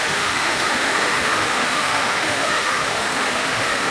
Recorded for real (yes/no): no